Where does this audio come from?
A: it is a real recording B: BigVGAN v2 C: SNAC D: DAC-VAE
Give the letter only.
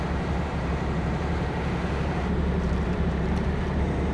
B